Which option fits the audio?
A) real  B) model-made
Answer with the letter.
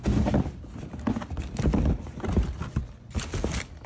A